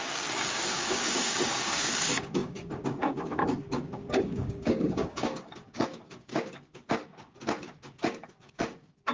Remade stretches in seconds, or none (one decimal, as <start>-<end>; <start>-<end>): 0.0-9.1